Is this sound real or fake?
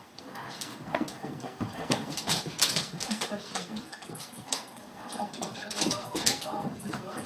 fake